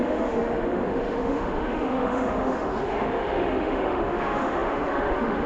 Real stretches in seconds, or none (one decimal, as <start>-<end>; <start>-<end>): none